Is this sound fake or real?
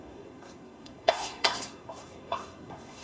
fake